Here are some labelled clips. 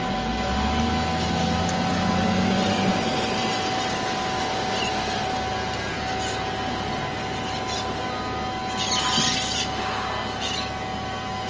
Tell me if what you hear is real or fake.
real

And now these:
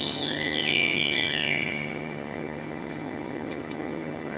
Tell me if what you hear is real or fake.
fake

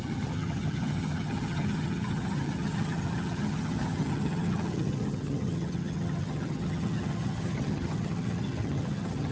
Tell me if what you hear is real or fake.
fake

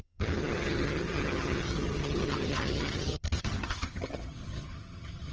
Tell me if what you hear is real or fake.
fake